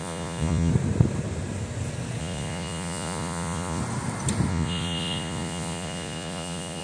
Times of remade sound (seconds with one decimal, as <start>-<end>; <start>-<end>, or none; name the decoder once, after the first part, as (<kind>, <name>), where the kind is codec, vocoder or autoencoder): 0.0-0.7 (vocoder, Vocos); 2.2-3.8; 4.5-6.8